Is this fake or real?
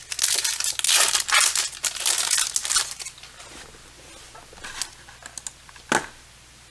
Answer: real